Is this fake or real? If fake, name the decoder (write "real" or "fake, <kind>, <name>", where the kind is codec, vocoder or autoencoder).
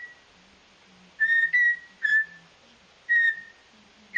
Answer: real